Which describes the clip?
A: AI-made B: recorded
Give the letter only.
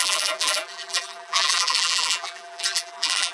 A